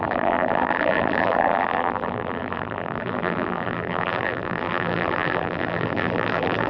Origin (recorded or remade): remade